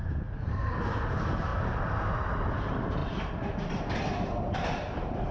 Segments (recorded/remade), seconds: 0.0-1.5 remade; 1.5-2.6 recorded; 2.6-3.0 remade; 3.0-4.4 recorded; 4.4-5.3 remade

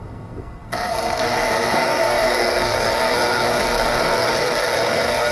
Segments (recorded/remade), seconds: 0.0-5.3 remade

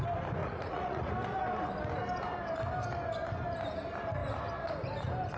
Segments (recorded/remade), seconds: 0.0-0.4 recorded; 0.4-1.1 remade; 1.1-5.4 recorded

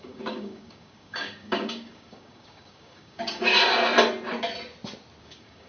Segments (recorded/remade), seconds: 0.0-3.5 remade; 3.5-5.2 recorded; 5.2-5.7 remade

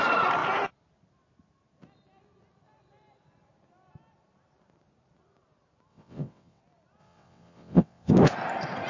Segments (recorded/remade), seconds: 0.0-5.9 recorded; 5.9-6.6 remade; 6.6-7.0 recorded; 7.0-8.1 remade; 8.1-8.9 recorded